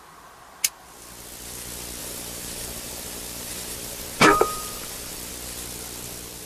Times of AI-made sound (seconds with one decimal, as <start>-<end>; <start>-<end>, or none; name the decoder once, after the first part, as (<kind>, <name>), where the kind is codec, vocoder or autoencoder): 2.0-5.3 (vocoder, BigVGAN v2)